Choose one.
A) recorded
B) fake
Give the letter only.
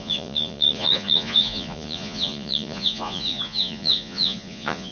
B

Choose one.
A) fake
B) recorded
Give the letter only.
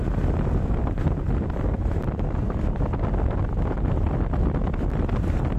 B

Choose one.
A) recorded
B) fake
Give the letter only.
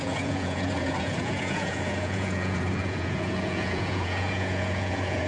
B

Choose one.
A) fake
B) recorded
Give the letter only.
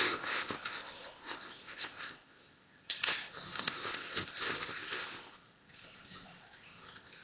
A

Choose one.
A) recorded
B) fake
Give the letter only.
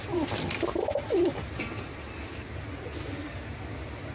A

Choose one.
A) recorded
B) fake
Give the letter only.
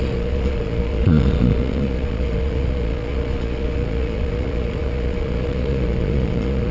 B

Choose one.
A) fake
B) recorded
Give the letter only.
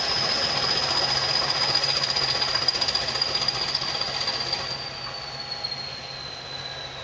B